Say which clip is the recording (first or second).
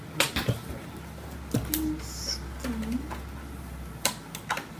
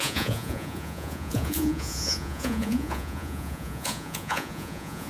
first